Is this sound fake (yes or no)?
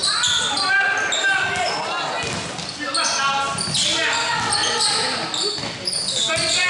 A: no